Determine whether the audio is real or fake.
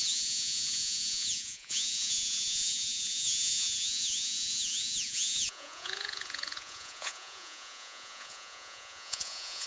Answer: fake